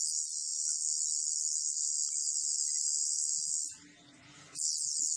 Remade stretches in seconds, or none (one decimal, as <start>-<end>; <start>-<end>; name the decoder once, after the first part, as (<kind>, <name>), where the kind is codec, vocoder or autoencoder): none